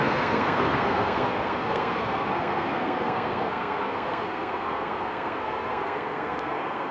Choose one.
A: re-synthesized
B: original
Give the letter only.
A